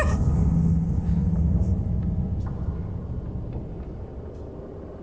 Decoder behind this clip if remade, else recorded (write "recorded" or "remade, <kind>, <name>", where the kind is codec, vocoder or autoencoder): recorded